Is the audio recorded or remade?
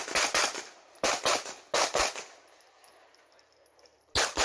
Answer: recorded